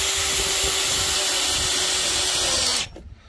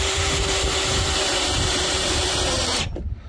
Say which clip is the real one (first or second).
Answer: first